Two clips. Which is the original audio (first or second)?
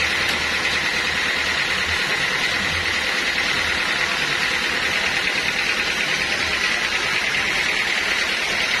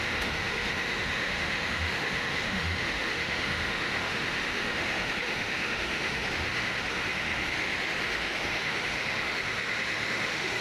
first